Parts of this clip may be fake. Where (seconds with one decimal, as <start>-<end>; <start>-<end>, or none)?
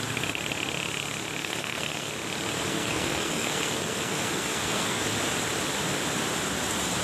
1.4-2.1; 2.7-5.0